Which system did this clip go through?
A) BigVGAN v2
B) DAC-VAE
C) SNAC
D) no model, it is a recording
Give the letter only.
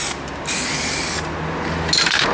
D